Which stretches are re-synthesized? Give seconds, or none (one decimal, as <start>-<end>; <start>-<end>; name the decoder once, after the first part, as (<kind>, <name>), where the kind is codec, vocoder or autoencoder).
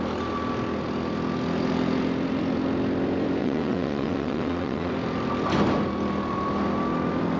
3.4-4.9 (vocoder, WaveNeXt)